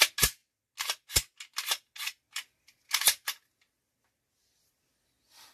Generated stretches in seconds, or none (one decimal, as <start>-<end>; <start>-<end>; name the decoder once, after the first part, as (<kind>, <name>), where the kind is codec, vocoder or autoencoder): none